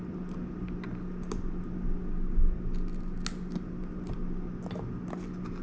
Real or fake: real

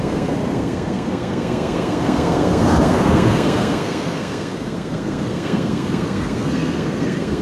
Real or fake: fake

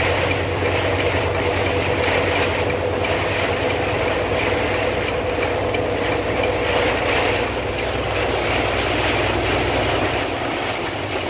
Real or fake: real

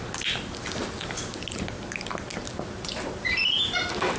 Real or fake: real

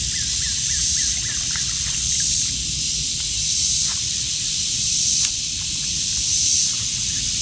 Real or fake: real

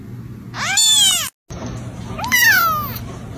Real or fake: real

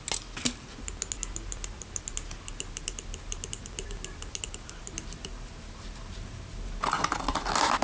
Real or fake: real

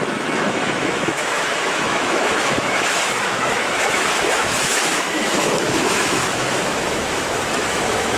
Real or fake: fake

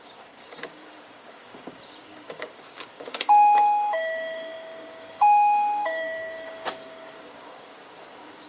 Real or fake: fake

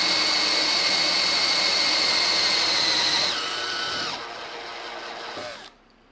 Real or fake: real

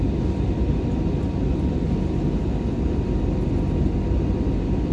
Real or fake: real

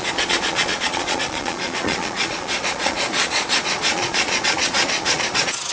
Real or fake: fake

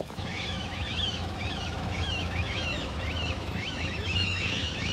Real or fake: fake